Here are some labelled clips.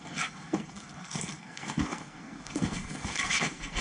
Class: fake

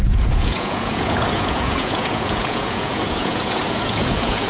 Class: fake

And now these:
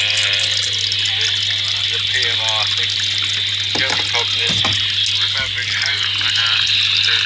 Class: real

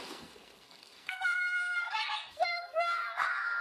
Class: fake